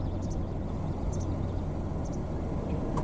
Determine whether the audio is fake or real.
real